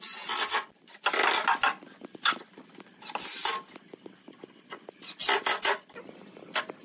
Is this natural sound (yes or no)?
yes